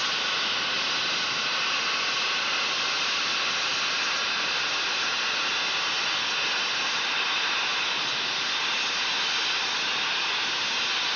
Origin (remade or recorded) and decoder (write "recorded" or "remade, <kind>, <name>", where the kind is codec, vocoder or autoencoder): recorded